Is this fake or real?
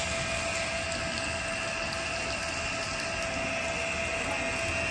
real